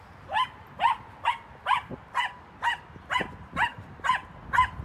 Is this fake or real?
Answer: real